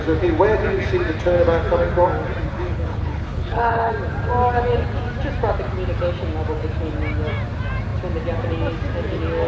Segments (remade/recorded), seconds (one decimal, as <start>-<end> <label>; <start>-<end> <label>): 0.0-2.5 recorded; 2.5-3.9 remade; 3.9-9.5 recorded